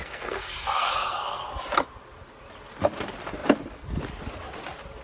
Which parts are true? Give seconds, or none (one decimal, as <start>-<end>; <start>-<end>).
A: 1.5-5.0